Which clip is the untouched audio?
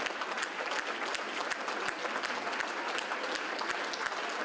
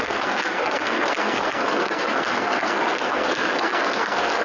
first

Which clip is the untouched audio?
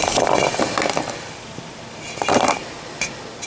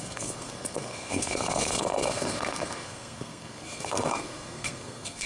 first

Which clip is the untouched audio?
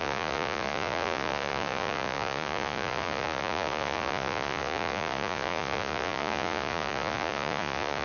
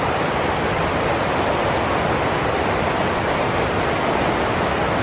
second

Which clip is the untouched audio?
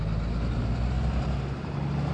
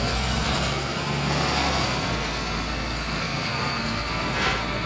first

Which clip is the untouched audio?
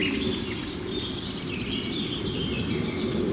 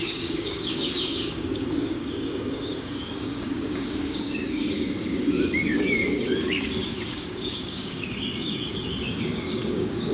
first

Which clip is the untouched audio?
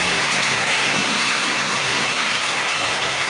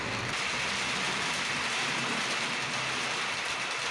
second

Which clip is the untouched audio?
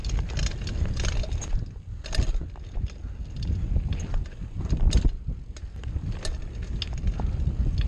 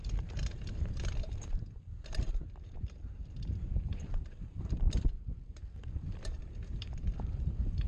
first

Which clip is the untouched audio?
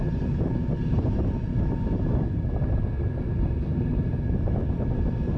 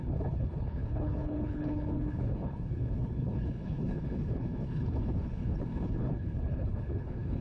first